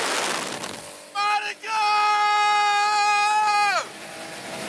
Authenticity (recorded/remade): recorded